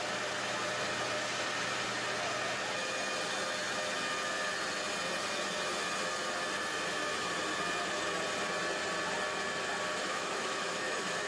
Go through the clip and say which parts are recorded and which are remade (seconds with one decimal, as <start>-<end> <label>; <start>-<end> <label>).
0.0-10.0 recorded; 10.0-11.3 remade